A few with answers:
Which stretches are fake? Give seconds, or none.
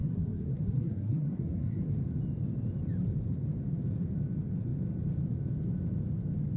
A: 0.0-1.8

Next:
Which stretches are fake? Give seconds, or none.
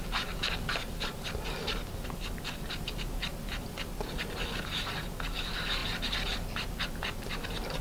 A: none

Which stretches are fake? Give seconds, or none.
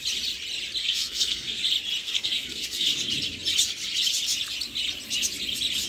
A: 0.8-1.6; 2.0-2.9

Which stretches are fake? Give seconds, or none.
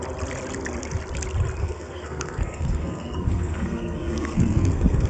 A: 1.6-5.1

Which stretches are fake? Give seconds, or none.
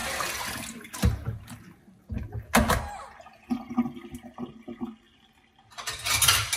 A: none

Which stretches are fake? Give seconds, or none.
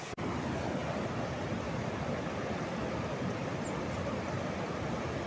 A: none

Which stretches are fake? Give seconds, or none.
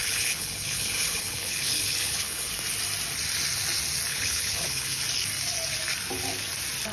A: 0.0-2.5; 4.1-5.0